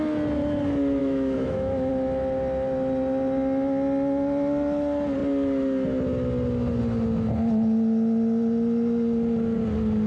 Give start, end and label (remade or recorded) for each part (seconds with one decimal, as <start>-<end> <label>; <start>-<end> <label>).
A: 0.0-1.0 recorded; 1.0-1.9 remade; 1.9-10.1 recorded